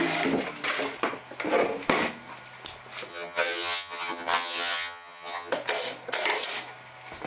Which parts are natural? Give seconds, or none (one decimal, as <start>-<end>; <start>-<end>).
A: 0.0-3.1; 5.5-7.3